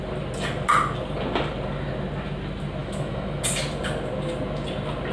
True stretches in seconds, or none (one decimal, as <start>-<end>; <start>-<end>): 0.0-2.8; 3.4-5.1